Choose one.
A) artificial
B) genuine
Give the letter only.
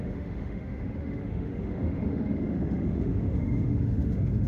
A